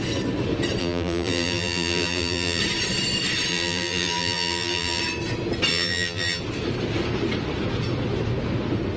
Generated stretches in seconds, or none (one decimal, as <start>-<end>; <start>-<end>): 0.8-2.6; 3.5-5.0; 5.7-6.4